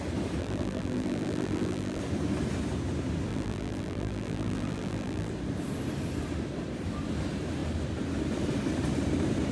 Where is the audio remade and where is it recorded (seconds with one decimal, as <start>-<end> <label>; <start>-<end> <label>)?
0.0-0.4 recorded; 0.4-2.0 remade; 2.0-3.3 recorded; 3.3-5.3 remade; 5.3-9.5 recorded